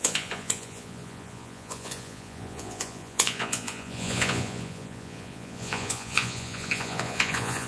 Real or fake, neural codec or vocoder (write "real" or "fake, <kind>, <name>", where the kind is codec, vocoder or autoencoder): fake, vocoder, Vocos